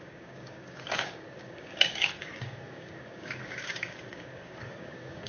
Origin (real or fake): fake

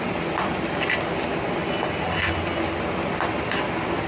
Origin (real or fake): real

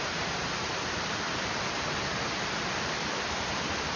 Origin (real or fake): real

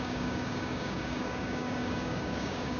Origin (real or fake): fake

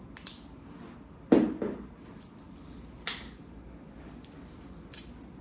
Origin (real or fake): real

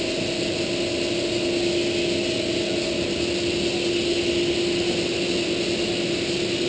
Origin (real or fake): real